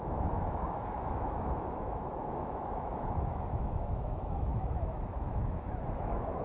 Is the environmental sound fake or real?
fake